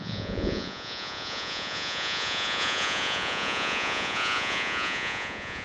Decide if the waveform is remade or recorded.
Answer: remade